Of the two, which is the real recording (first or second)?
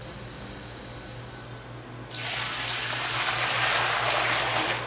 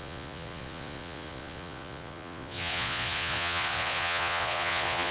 first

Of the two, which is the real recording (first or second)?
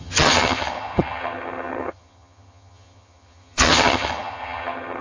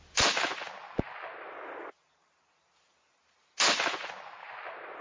second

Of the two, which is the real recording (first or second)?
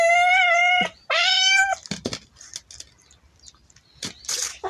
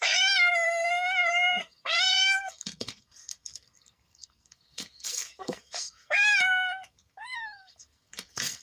first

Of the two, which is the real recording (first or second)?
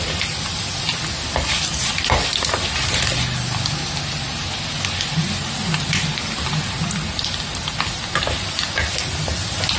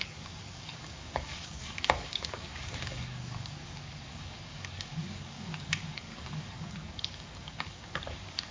first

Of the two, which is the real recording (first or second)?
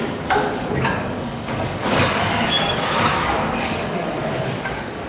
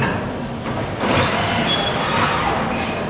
second